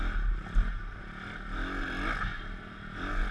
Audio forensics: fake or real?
real